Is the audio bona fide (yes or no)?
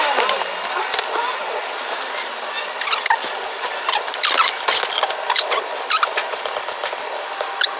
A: yes